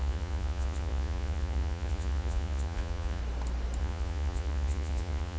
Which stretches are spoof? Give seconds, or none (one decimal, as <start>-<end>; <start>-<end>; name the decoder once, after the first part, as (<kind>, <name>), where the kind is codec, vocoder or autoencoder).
0.0-3.2 (vocoder, Vocos); 3.8-5.4